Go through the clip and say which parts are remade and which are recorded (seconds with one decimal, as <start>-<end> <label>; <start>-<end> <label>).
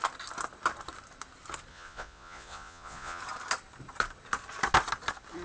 0.0-1.7 recorded; 1.7-3.2 remade; 3.2-5.4 recorded